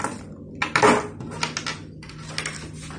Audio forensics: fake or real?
real